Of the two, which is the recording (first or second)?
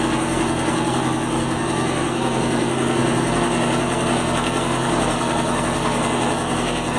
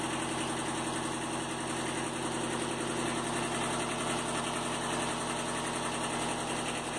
second